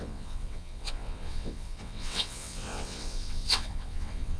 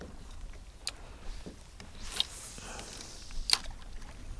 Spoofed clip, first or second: first